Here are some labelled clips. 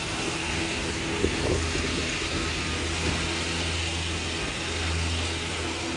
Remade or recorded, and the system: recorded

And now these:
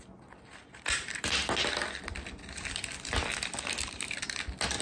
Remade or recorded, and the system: recorded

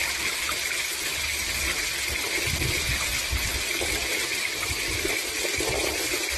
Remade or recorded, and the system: recorded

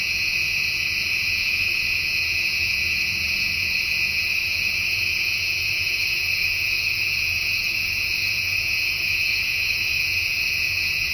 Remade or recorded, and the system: remade, vocoder, Vocos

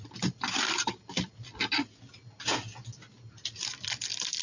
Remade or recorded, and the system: recorded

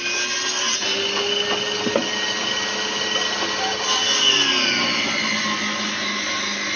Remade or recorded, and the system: recorded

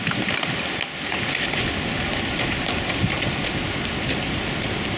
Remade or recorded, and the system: recorded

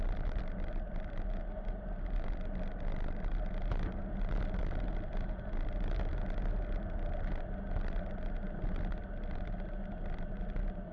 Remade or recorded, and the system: recorded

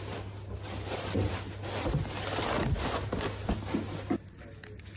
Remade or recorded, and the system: recorded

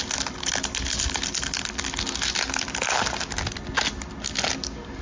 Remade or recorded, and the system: recorded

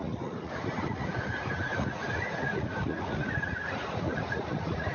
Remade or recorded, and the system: remade, vocoder, Vocos